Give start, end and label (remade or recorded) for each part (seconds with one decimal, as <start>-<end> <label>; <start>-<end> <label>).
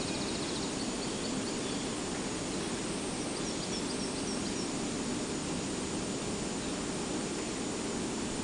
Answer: 0.0-8.4 recorded